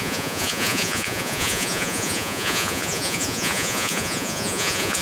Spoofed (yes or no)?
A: yes